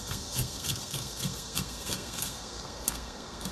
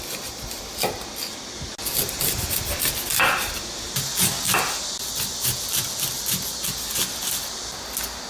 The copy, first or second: first